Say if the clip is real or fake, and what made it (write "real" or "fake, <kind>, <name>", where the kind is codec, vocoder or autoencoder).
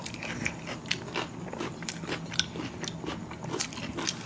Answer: real